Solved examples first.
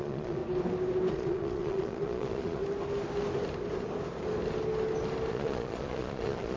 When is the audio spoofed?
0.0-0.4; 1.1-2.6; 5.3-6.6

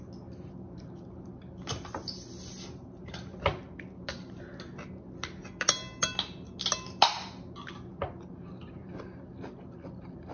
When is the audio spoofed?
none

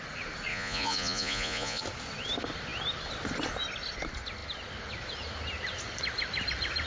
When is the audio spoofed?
0.5-1.8

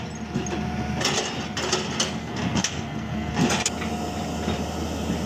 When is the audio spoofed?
2.2-3.3

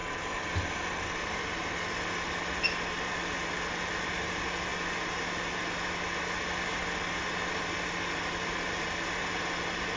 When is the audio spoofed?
none